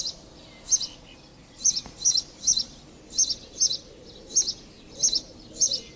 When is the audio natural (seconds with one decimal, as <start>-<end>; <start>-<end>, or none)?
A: 0.0-6.0